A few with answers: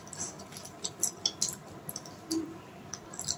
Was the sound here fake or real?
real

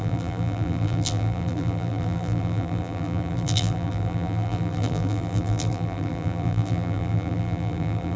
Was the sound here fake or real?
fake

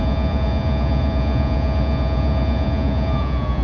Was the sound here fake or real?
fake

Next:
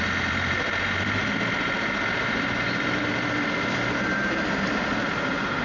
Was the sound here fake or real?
fake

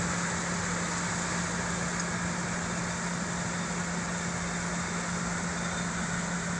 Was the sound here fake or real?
real